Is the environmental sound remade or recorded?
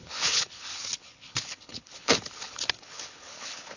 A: remade